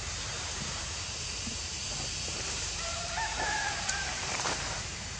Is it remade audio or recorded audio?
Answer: remade